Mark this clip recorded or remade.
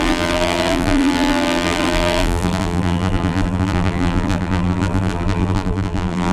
remade